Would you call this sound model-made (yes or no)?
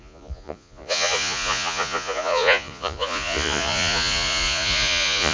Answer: yes